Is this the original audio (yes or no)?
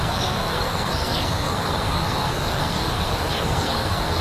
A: no